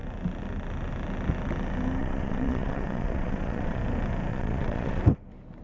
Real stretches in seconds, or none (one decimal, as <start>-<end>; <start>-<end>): 0.0-2.0; 3.8-4.3; 5.0-5.6